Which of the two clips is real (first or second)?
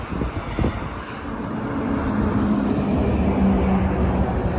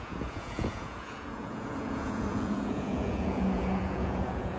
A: first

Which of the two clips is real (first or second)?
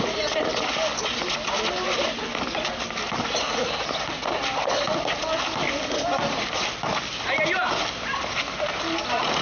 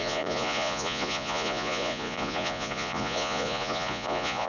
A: first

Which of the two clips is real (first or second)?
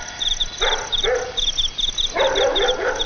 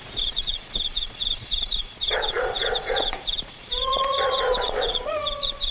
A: first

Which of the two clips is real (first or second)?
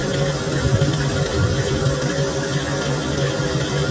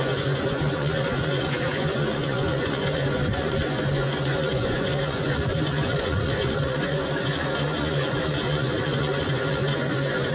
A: first